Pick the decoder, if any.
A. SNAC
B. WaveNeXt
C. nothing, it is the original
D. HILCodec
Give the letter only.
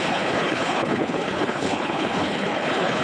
D